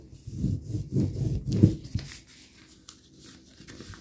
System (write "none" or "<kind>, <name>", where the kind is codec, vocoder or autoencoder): none